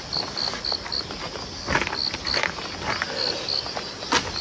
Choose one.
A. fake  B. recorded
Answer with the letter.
B